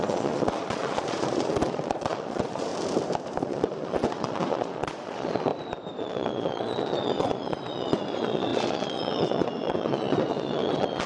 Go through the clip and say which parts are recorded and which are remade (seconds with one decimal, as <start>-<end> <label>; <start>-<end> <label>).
0.0-2.7 remade; 2.7-3.4 recorded; 3.4-5.5 remade; 5.5-6.0 recorded; 6.0-11.1 remade